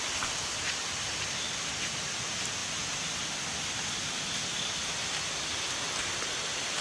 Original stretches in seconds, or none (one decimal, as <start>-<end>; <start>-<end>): 0.0-6.8